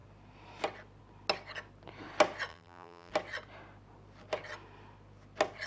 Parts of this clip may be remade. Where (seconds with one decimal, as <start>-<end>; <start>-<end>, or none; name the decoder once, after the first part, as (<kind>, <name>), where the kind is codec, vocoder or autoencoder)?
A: 2.5-3.1 (vocoder, BigVGAN v2)